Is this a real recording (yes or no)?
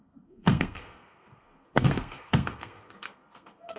no